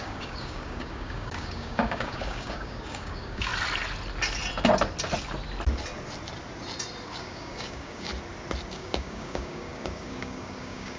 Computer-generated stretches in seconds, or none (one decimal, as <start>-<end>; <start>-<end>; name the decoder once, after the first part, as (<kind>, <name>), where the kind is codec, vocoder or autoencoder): 0.0-3.5 (codec, DAC); 7.2-8.1; 8.7-11.0